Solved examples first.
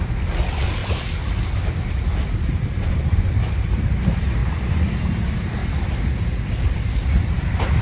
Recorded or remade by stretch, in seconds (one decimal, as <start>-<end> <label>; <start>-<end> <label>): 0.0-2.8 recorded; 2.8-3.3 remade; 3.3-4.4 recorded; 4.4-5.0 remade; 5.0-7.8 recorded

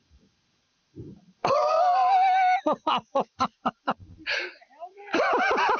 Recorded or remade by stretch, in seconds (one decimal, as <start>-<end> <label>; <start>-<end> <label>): 0.0-5.8 recorded

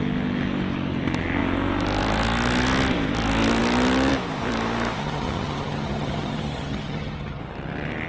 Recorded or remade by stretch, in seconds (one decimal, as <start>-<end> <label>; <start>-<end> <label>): 0.0-5.0 recorded; 5.0-7.4 remade; 7.4-8.1 recorded